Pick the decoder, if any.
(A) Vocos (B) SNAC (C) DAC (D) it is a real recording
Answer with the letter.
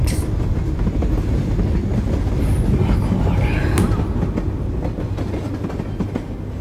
D